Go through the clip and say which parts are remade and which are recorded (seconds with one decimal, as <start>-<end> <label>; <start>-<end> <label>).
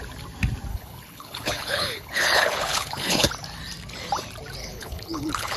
0.0-0.7 recorded; 0.7-3.3 remade; 3.3-4.6 recorded; 4.6-5.6 remade